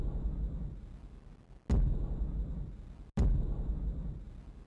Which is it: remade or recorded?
recorded